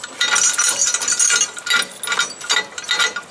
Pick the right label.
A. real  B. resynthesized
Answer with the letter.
A